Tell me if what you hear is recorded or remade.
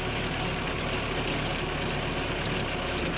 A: recorded